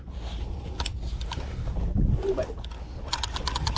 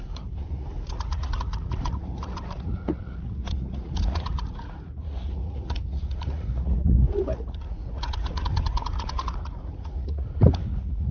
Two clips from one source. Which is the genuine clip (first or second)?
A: first